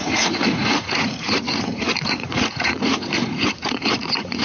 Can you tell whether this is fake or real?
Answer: fake